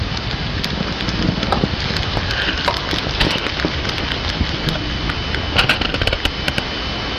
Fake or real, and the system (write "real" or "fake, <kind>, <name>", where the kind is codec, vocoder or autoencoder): real